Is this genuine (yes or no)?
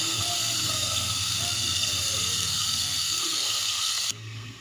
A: no